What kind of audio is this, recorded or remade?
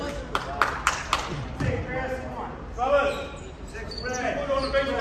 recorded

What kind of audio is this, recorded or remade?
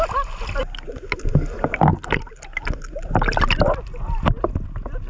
recorded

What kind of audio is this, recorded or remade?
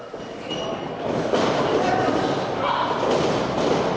recorded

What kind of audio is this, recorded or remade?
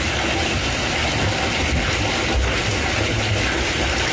recorded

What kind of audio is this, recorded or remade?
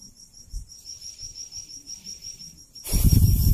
remade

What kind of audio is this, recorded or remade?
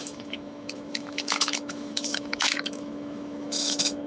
remade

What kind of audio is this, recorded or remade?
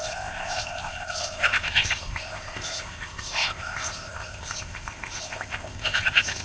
remade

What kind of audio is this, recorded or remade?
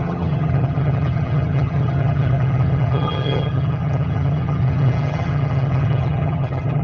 remade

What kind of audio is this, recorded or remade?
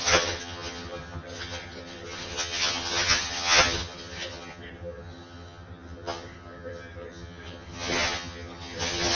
remade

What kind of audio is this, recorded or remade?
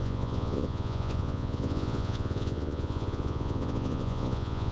remade